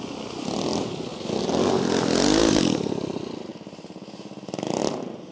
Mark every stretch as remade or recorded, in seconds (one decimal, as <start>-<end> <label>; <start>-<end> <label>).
0.0-5.3 recorded